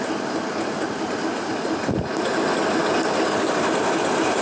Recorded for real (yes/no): yes